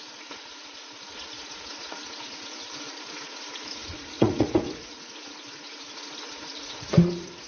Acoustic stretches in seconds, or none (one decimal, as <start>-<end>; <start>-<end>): none